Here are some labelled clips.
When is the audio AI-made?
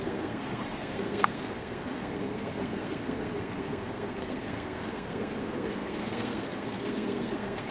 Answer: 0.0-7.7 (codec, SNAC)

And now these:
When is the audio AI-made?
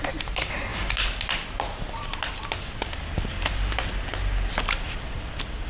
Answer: none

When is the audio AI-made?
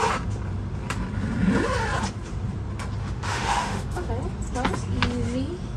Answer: 3.0-4.1 (autoencoder, DAC-VAE)